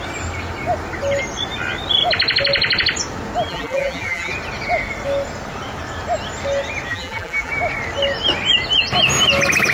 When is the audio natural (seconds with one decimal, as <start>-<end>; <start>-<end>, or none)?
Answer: 0.0-3.5; 4.3-6.9; 7.5-9.7

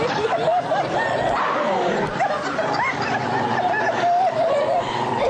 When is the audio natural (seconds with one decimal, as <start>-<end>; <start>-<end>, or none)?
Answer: 0.0-5.3

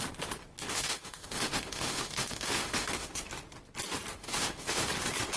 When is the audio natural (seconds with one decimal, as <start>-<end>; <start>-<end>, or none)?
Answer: 0.0-0.7; 3.2-4.2; 4.9-5.4

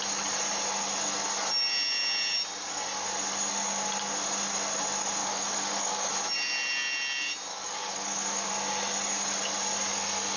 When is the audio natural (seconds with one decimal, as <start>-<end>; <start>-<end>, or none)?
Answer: 0.0-5.2; 6.1-7.5; 8.5-10.4

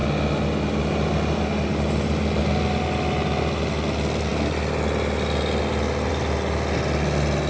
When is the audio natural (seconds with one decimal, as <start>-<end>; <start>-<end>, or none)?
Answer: 0.0-7.5

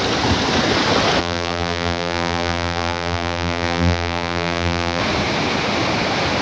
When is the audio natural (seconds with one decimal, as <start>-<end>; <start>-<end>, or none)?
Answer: 0.0-1.2; 5.0-6.4

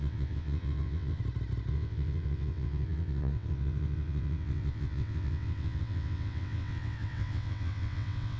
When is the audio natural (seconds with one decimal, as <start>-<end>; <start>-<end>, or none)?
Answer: 1.2-1.7

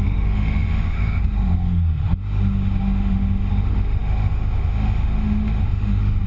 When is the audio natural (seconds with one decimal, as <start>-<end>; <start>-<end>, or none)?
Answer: none